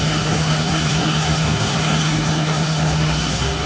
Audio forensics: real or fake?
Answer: fake